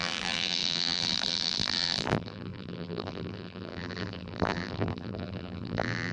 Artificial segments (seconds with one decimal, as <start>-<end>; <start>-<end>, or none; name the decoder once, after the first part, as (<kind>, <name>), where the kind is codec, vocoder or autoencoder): 0.0-6.1 (vocoder, BigVGAN v2)